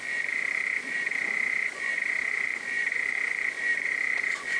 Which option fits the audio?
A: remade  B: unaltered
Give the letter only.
A